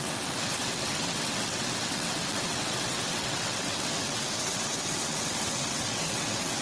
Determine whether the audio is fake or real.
fake